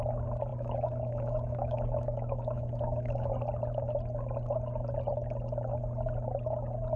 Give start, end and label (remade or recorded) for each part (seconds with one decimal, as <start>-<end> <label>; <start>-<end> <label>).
0.0-0.5 recorded; 0.5-3.3 remade; 3.3-7.0 recorded